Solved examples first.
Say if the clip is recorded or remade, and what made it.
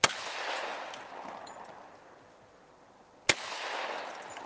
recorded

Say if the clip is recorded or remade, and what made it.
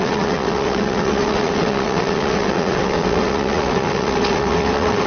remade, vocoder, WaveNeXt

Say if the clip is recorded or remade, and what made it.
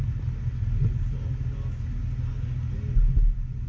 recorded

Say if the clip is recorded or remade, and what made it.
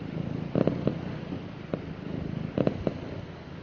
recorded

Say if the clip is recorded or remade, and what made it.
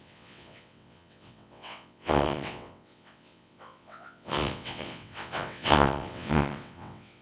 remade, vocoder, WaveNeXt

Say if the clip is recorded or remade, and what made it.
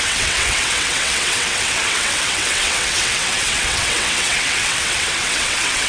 remade, vocoder, WaveNeXt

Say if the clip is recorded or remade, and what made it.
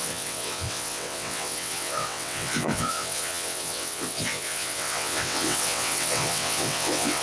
remade, vocoder, WaveNeXt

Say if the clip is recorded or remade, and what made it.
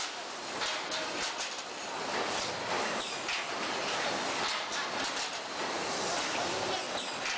recorded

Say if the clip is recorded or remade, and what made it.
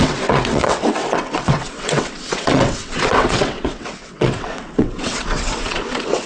remade, vocoder, WaveNeXt